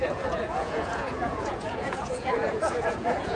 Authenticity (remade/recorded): remade